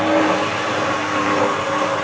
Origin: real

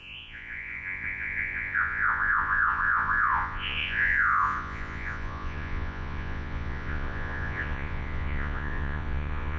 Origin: fake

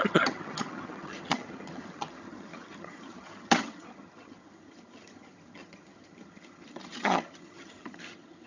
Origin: fake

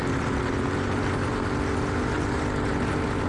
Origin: real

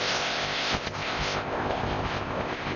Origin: fake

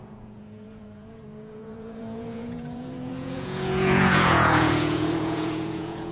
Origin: fake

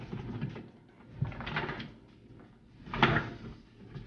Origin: real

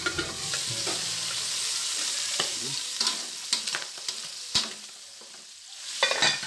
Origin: real